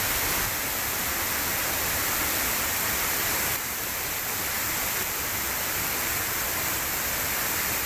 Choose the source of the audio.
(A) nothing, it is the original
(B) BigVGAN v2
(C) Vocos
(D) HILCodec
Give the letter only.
B